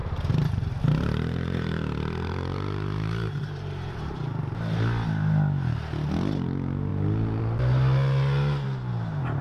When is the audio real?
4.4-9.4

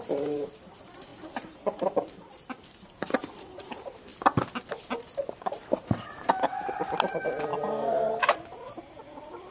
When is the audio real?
4.1-5.3

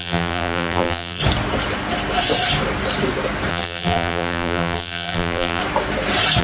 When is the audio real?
1.2-3.5; 5.6-6.4